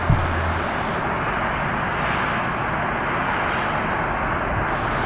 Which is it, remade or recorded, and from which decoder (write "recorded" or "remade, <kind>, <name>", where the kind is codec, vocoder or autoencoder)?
recorded